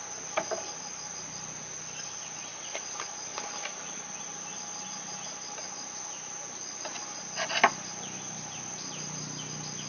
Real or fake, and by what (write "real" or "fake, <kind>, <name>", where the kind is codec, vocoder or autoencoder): real